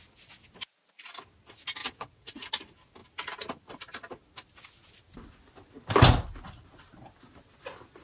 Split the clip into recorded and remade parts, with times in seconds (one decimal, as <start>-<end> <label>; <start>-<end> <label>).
0.0-1.8 recorded; 1.8-2.3 remade; 2.3-8.0 recorded